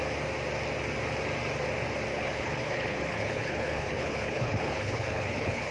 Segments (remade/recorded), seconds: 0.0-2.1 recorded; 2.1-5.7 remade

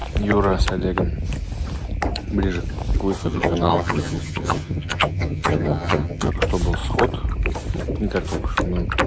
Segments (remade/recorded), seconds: 0.0-3.2 recorded; 3.2-6.3 remade; 6.3-9.1 recorded